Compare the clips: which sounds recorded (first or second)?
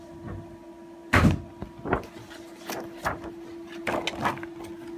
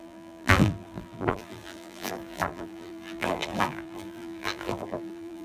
first